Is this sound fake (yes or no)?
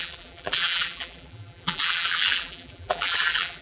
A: yes